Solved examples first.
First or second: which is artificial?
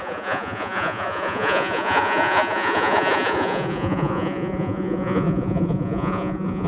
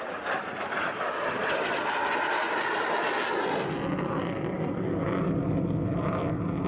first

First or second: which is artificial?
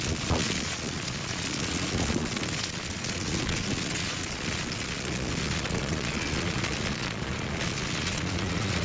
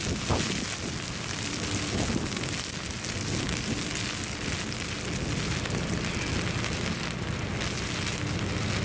first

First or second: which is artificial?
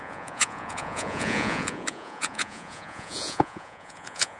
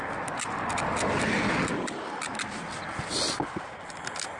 first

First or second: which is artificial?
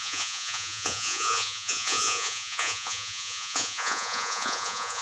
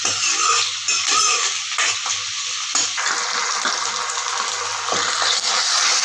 first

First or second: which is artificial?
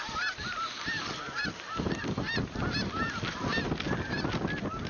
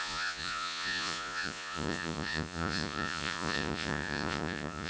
second